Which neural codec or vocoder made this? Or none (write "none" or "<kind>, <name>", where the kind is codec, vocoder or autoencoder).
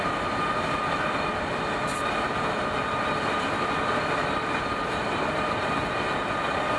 none